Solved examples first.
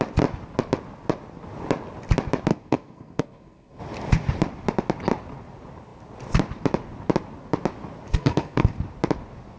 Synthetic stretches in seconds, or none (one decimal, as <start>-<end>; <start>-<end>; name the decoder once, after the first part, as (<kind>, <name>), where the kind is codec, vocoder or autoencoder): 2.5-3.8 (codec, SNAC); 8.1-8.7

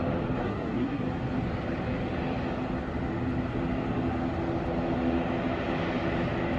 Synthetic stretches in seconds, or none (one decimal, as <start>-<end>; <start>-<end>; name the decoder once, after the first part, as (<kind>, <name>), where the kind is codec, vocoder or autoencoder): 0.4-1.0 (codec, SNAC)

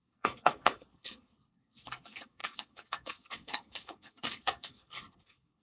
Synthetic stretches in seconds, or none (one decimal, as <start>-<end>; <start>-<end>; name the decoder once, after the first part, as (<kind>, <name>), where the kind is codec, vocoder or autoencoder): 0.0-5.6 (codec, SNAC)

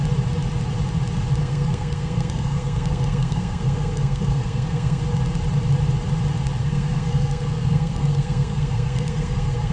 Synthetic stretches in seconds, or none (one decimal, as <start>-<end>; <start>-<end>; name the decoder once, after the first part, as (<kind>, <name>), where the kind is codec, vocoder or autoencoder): 1.4-5.0 (codec, SNAC); 6.6-9.7

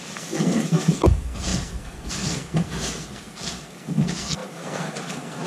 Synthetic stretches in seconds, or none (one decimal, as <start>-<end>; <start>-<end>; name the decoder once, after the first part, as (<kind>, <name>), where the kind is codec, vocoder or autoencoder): 0.0-5.5 (codec, SNAC)

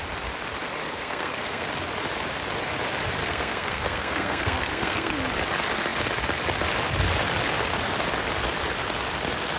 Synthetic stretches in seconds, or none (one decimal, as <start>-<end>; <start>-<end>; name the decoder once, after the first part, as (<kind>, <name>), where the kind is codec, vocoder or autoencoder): 0.8-1.7 (codec, SNAC); 3.2-5.1

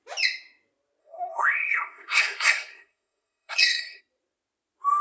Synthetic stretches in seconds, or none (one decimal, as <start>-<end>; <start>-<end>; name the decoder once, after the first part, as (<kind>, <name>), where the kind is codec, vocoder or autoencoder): 1.0-4.0 (codec, SNAC)